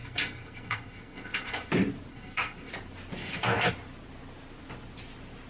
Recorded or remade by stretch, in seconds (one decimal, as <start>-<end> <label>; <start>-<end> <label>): 0.0-1.7 remade; 1.7-2.1 recorded; 2.1-2.7 remade; 2.7-3.2 recorded; 3.2-3.7 remade; 3.7-5.5 recorded